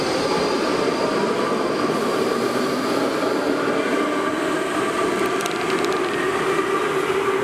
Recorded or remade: recorded